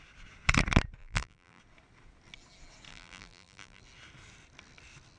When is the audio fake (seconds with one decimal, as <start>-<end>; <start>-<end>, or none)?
1.0-1.6; 2.9-3.8

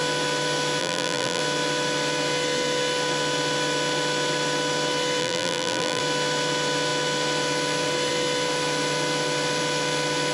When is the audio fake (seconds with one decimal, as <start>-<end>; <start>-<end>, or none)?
0.8-1.4; 5.2-6.0

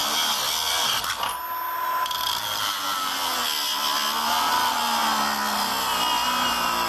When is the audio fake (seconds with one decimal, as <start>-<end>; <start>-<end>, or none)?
none

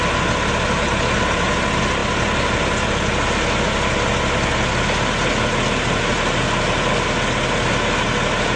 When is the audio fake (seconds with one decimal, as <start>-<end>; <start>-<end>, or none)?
none

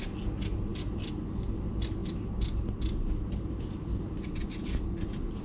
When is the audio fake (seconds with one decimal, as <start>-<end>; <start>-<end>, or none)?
none

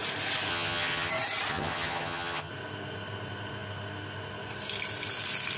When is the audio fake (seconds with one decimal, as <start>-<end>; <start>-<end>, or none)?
0.5-1.1; 1.5-2.5

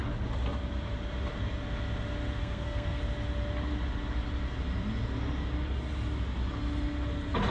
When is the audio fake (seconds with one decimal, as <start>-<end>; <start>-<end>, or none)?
2.4-3.0

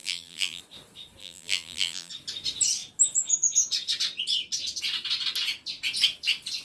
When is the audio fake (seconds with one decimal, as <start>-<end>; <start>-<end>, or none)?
0.0-0.6; 1.2-2.1